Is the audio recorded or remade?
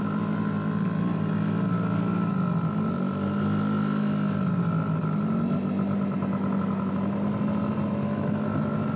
recorded